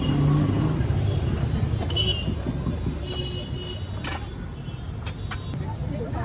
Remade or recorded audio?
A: recorded